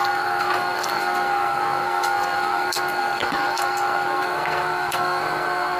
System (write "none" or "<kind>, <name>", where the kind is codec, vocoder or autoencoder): codec, SNAC